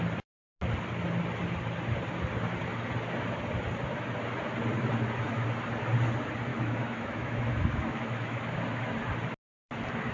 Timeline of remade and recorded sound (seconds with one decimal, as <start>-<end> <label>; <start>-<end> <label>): 0.0-6.5 recorded; 6.5-8.6 remade; 8.6-10.1 recorded